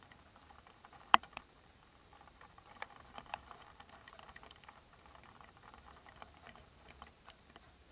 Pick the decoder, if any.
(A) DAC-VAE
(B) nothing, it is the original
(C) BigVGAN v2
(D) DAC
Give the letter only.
C